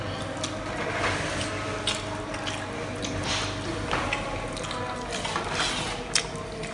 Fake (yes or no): no